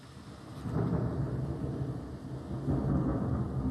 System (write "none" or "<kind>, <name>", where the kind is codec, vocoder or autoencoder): none